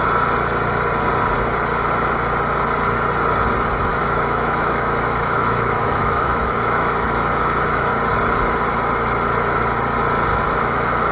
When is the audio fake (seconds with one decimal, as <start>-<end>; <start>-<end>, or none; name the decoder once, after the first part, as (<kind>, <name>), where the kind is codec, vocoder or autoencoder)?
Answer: 3.9-7.9 (autoencoder, DAC-VAE); 10.3-11.1